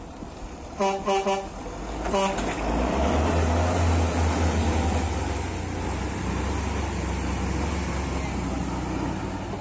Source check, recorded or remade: recorded